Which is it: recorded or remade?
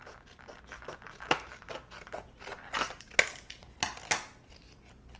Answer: recorded